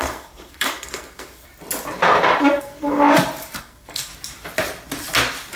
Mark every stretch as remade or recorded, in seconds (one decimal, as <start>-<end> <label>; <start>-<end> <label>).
0.0-1.5 remade; 1.5-2.6 recorded; 2.6-3.0 remade; 3.0-3.6 recorded; 3.6-4.1 remade; 4.1-5.6 recorded